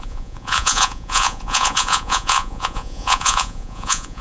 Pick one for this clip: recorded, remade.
remade